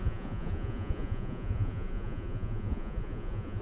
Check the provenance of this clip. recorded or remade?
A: remade